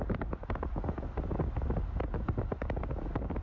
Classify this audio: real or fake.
real